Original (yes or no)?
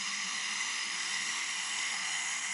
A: no